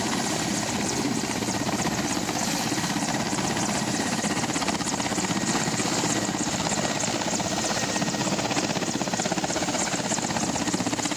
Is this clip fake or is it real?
real